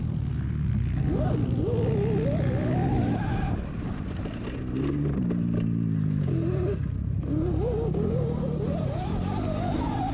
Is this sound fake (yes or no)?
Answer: no